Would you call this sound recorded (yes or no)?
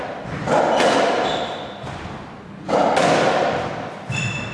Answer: yes